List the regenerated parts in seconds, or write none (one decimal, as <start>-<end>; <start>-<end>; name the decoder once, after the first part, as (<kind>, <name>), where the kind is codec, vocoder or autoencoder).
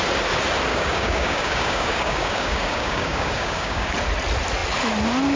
0.7-3.9 (codec, DAC)